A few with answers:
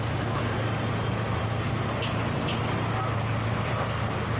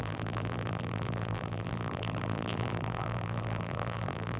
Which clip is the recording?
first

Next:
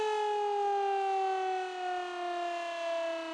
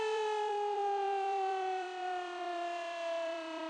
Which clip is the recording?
first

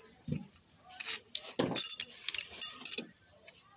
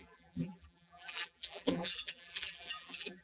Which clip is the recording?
first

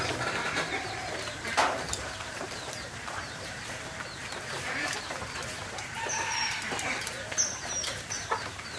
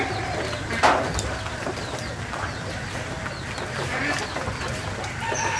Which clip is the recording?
second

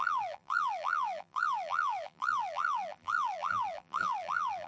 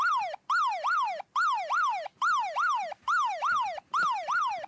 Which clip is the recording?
second